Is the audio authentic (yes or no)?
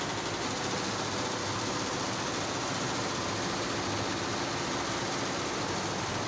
yes